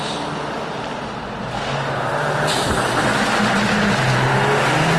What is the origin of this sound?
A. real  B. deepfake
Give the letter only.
A